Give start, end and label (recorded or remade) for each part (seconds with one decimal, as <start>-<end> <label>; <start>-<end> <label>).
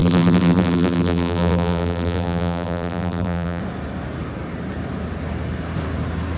0.0-3.6 remade; 3.6-6.4 recorded